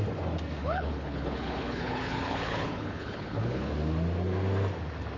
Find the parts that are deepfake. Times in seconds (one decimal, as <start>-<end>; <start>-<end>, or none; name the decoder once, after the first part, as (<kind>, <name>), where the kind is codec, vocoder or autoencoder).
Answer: 0.6-3.7 (codec, HILCodec)